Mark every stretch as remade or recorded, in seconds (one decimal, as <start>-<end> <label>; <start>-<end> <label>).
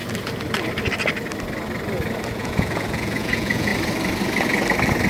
0.0-2.3 recorded; 2.3-3.7 remade; 3.7-5.1 recorded